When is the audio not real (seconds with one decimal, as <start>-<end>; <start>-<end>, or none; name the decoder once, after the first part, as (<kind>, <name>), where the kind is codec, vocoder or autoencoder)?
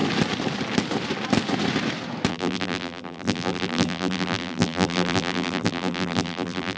2.3-6.8 (vocoder, BigVGAN v2)